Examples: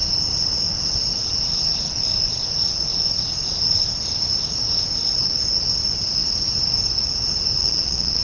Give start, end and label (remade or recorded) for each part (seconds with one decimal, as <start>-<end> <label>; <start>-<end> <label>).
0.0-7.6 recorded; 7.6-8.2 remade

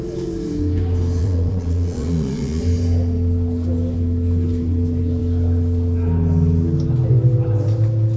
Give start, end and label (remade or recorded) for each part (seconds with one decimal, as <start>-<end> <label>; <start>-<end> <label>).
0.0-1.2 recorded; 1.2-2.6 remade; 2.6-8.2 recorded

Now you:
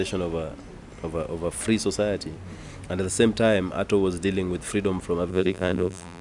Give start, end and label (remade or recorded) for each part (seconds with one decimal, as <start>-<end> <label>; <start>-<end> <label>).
0.0-5.3 recorded; 5.3-6.2 remade

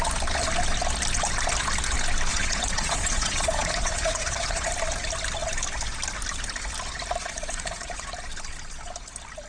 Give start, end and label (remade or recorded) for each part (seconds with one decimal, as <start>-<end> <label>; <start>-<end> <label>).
0.0-2.3 recorded; 2.3-4.7 remade; 4.7-7.2 recorded; 7.2-8.1 remade; 8.1-9.5 recorded

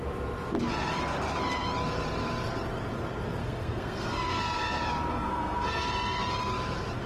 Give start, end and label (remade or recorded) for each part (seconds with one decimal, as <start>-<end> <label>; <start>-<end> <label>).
0.0-3.4 recorded; 3.4-4.4 remade; 4.4-5.1 recorded; 5.1-5.9 remade; 5.9-7.1 recorded

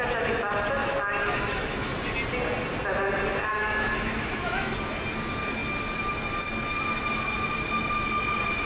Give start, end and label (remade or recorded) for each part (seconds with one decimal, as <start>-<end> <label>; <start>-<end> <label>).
0.0-0.8 recorded; 0.8-2.0 remade; 2.0-3.5 recorded; 3.5-4.8 remade; 4.8-8.7 recorded

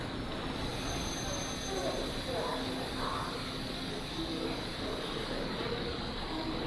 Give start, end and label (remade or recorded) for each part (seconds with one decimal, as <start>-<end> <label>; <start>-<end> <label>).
0.0-2.5 recorded; 2.5-6.7 remade